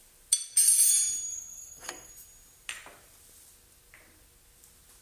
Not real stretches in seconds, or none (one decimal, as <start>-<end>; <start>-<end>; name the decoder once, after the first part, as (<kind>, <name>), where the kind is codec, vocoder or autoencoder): 1.3-2.1 (codec, SNAC)

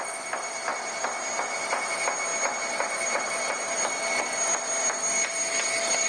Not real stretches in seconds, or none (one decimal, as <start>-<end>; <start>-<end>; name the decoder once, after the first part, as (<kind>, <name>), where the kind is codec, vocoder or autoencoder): none

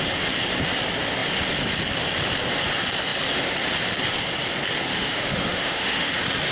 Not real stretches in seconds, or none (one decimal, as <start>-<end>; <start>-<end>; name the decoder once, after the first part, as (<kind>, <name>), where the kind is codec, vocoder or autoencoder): 4.9-6.1 (autoencoder, DAC-VAE)